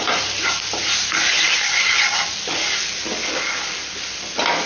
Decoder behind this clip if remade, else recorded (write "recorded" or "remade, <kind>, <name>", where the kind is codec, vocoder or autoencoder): recorded